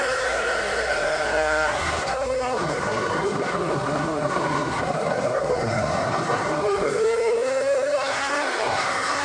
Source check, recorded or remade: remade